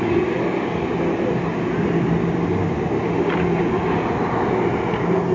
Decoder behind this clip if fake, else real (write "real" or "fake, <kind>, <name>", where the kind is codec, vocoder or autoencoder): real